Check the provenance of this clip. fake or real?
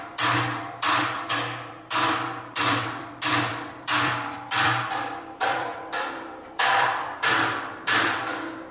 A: fake